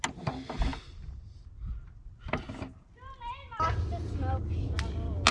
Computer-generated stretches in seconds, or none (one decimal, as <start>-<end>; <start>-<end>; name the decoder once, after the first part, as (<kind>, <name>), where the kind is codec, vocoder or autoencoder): none